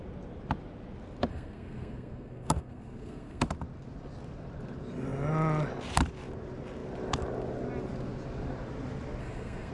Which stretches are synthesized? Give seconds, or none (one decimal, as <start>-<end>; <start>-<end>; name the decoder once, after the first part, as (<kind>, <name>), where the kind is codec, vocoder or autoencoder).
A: 1.3-3.4 (codec, SNAC); 9.2-9.7

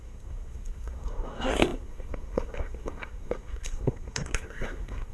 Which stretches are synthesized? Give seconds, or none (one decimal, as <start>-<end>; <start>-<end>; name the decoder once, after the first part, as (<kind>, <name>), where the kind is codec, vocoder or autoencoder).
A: 0.0-5.1 (codec, SNAC)

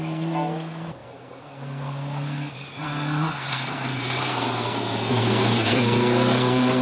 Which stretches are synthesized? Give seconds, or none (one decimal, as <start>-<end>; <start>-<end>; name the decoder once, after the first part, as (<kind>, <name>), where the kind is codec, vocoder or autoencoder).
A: 0.0-6.8 (codec, SNAC)

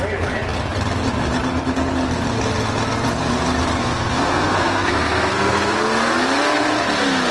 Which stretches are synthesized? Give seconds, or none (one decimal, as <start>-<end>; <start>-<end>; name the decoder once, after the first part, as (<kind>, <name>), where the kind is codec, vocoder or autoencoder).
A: 3.8-5.8 (codec, SNAC)

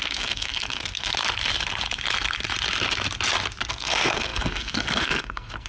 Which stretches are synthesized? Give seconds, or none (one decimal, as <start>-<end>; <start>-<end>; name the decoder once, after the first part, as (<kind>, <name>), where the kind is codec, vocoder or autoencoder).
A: 0.0-1.1 (codec, SNAC); 3.7-5.7

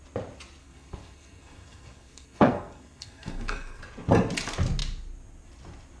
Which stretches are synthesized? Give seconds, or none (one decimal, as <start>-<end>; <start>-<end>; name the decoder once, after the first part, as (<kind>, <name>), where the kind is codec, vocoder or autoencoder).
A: 0.6-3.8 (codec, SNAC)

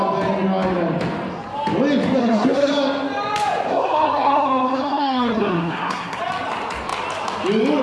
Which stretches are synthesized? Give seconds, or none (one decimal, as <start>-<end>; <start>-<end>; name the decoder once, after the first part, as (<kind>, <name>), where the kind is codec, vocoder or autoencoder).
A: 2.2-2.7 (codec, SNAC); 3.7-6.2